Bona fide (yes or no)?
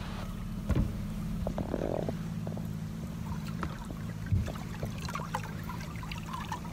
no